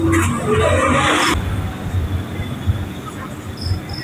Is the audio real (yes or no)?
yes